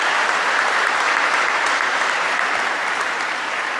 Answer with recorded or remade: remade